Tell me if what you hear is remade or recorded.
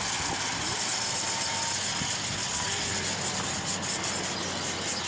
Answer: recorded